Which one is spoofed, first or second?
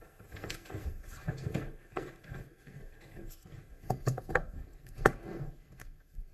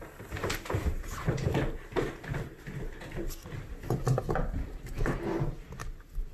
first